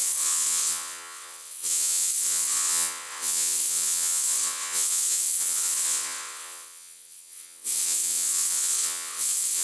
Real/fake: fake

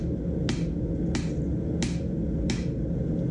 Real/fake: real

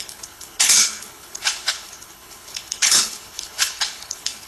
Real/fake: fake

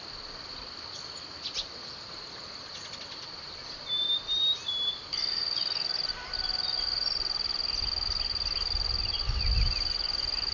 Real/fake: real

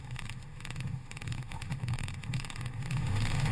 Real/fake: fake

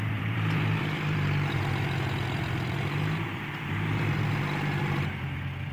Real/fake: fake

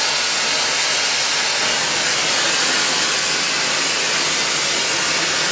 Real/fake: real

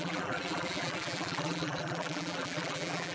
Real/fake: fake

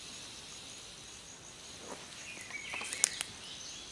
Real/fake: real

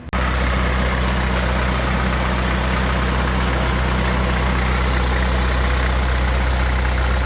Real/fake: real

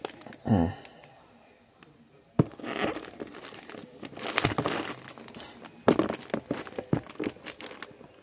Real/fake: real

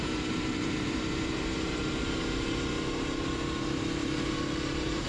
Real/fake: fake